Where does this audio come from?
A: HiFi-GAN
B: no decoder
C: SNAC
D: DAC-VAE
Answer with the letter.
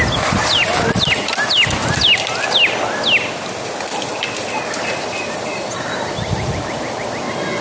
B